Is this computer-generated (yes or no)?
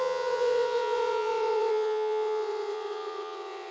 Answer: yes